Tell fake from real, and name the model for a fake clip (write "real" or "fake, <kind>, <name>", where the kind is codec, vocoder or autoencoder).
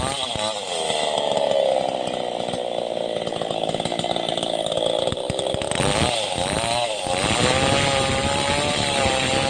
real